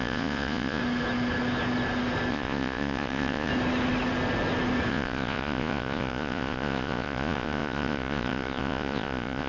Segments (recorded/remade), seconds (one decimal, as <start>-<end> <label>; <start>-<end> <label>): 0.0-0.8 remade; 0.8-2.3 recorded; 2.3-3.5 remade; 3.5-4.9 recorded; 4.9-9.5 remade